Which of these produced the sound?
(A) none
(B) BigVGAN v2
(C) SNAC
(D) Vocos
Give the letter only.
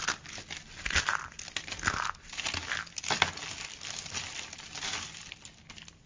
A